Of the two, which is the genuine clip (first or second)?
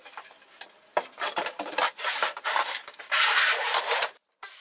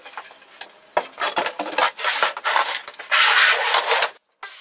second